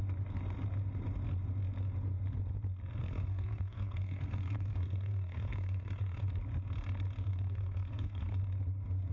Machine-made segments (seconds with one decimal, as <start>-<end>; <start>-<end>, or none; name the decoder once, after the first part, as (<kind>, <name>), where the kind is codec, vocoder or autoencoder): 3.0-6.3 (codec, SNAC); 7.3-8.4